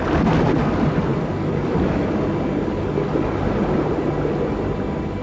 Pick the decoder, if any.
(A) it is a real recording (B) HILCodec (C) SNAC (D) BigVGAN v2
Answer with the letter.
A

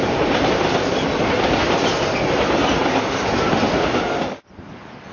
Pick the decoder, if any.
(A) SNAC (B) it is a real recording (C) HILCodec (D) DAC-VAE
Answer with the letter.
B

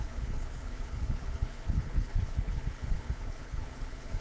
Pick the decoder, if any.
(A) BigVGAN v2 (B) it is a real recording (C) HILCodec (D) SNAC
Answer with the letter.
C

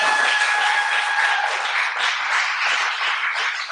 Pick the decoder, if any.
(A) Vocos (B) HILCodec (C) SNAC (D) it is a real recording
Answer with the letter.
D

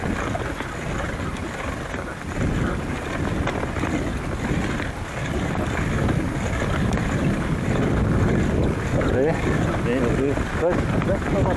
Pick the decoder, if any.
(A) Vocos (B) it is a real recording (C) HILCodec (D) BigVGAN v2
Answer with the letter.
B